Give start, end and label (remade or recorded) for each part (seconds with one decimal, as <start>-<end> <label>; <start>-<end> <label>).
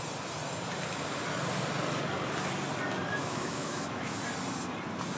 0.0-3.2 recorded; 3.2-4.2 remade; 4.2-5.2 recorded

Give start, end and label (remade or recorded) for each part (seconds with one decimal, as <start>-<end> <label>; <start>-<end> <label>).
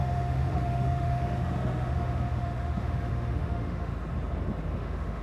0.0-3.9 remade; 3.9-4.7 recorded; 4.7-5.2 remade